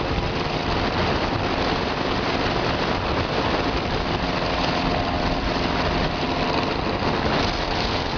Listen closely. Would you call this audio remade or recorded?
remade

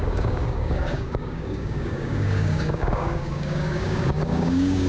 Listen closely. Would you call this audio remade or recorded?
remade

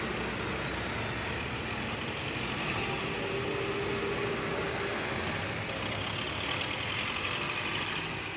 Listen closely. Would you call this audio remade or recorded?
recorded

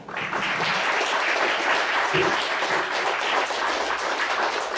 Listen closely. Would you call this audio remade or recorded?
recorded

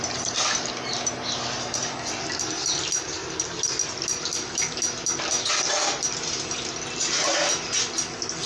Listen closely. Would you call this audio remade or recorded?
recorded